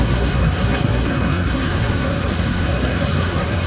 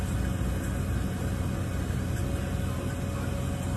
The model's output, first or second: first